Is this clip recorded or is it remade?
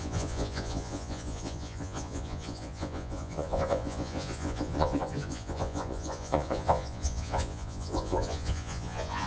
remade